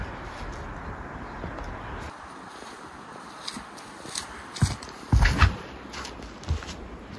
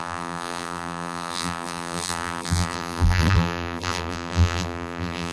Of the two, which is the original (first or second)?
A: first